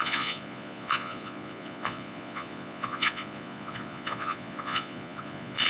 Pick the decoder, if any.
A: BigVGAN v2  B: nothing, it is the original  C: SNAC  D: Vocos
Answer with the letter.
D